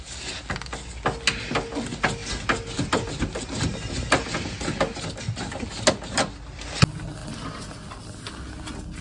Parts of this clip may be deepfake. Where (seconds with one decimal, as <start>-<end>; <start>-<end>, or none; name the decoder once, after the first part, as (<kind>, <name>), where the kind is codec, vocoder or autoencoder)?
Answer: none